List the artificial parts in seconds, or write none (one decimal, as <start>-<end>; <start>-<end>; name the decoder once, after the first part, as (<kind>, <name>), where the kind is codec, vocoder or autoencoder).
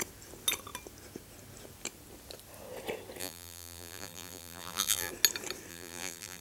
3.2-5.1 (vocoder, BigVGAN v2); 5.7-6.4